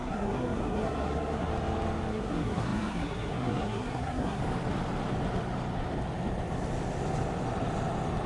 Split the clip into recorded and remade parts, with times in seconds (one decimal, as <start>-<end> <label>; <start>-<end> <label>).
0.0-1.5 remade; 1.5-2.1 recorded; 2.1-4.4 remade; 4.4-8.3 recorded